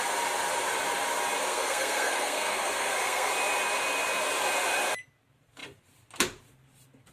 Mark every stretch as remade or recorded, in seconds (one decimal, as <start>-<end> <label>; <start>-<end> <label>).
0.0-1.5 recorded; 1.5-3.3 remade; 3.3-7.1 recorded